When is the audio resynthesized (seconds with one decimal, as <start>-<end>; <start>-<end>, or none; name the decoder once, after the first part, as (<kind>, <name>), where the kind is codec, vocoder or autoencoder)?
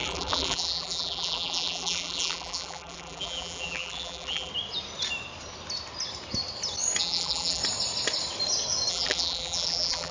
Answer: 0.0-4.5 (vocoder, BigVGAN v2); 7.0-7.6; 8.9-10.1